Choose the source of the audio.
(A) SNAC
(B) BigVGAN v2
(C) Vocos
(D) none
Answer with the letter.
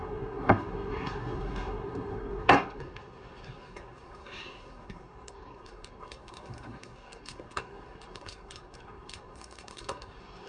A